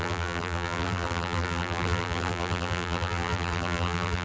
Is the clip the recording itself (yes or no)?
no